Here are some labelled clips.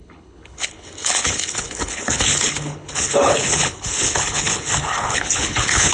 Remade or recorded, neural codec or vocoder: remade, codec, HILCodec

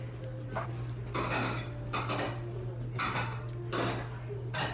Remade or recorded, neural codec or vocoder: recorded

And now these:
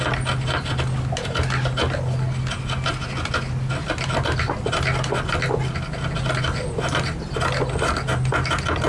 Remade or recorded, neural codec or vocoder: recorded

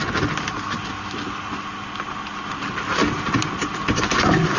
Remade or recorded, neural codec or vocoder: recorded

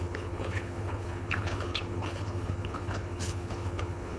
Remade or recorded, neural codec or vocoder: remade, codec, HILCodec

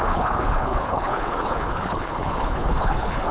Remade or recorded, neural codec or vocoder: remade, codec, HILCodec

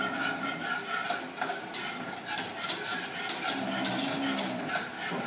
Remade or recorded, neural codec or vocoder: recorded